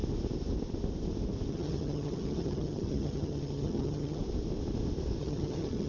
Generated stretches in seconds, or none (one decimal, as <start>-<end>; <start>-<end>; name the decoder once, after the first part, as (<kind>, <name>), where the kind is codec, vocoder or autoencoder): 1.5-4.2 (vocoder, HiFi-GAN); 5.2-5.9